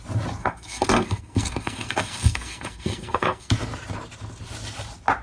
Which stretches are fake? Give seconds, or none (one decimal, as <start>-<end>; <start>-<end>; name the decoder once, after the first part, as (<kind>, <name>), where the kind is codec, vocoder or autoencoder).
0.4-3.5 (codec, SNAC)